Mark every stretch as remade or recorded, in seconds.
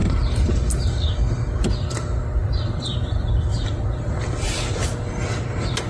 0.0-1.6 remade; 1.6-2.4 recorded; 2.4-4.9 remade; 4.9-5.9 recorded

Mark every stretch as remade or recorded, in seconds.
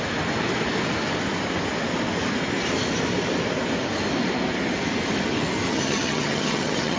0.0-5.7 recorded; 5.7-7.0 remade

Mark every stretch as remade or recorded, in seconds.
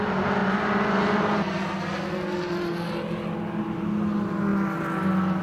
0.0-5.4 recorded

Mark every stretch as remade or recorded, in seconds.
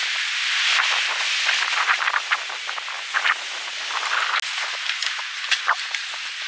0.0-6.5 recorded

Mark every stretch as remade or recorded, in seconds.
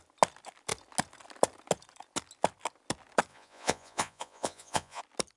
0.0-3.3 recorded; 3.3-5.0 remade; 5.0-5.4 recorded